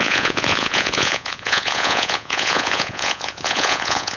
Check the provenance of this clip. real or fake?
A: fake